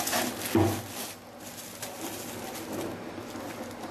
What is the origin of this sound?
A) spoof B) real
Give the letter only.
B